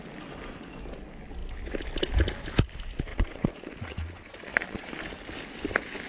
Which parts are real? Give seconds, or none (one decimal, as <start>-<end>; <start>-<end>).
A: 0.0-3.1; 4.9-6.1